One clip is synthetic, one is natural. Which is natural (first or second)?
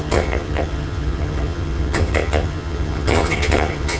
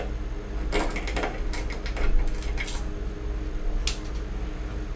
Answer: second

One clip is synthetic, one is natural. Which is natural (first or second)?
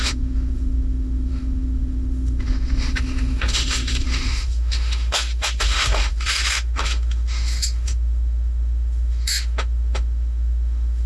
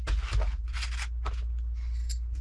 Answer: second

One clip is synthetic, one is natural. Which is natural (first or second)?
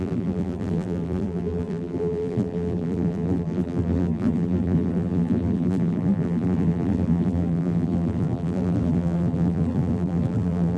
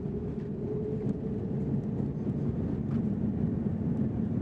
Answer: second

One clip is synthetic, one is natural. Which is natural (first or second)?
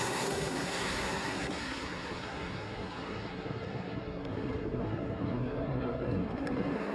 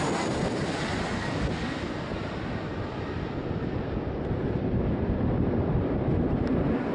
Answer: second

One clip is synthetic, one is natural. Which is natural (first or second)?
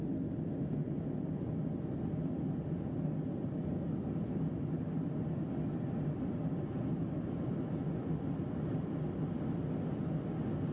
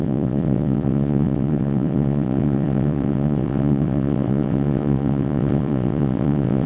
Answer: first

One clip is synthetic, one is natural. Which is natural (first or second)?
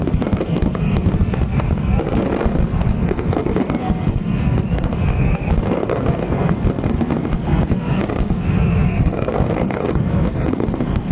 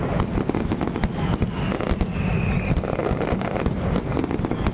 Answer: second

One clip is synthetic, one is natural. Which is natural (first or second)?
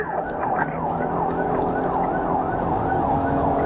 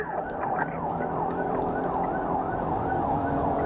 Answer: first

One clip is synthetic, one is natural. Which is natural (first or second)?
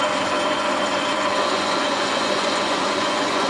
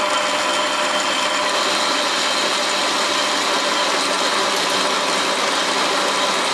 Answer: second